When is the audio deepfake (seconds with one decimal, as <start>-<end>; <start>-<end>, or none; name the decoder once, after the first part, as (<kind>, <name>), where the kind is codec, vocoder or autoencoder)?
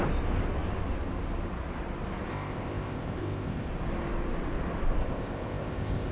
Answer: 2.3-3.7 (codec, ZipCodec); 5.0-6.1